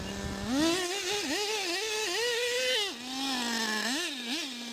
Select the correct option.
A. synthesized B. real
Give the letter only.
B